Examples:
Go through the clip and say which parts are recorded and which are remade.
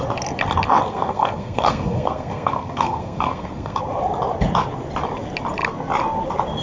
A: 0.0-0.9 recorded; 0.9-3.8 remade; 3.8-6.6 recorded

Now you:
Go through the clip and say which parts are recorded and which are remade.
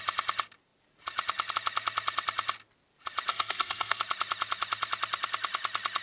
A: 0.0-3.3 recorded; 3.3-4.0 remade; 4.0-6.0 recorded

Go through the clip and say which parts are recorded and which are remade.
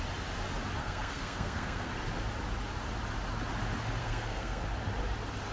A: 0.0-0.8 recorded; 0.8-1.9 remade; 1.9-4.0 recorded; 4.0-4.6 remade; 4.6-5.5 recorded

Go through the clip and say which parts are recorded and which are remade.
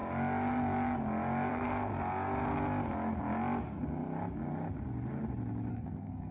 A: 0.0-1.5 recorded; 1.5-1.9 remade; 1.9-5.7 recorded; 5.7-6.3 remade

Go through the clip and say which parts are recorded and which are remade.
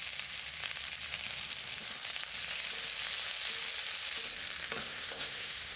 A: 0.0-4.8 recorded; 4.8-5.8 remade